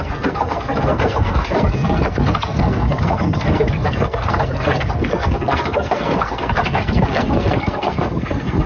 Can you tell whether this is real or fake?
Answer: fake